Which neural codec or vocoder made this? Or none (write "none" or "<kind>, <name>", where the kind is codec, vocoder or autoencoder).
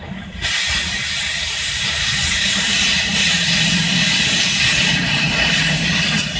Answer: vocoder, BigVGAN v2